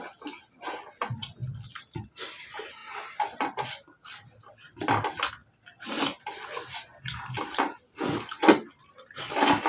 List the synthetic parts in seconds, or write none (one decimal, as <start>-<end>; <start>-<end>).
none